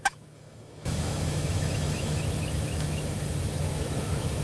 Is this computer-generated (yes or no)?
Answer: yes